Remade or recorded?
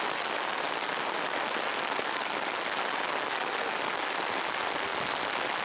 recorded